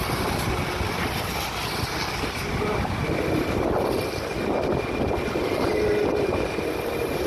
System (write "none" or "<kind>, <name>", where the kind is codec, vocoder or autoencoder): none